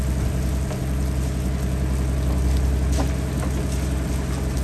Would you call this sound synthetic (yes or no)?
no